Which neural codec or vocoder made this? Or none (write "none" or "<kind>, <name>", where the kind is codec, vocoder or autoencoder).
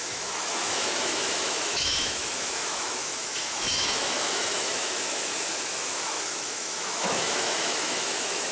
autoencoder, DAC-VAE